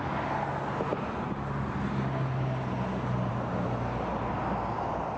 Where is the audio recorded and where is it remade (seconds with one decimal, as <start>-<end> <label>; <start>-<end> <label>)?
0.0-5.2 recorded

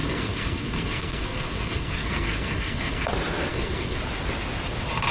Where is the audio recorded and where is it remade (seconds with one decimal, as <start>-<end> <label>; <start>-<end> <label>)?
0.0-3.1 remade; 3.1-3.5 recorded; 3.5-4.0 remade; 4.0-5.1 recorded

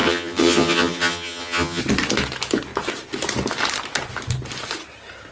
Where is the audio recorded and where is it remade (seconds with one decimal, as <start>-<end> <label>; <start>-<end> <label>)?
0.0-1.8 remade; 1.8-5.3 recorded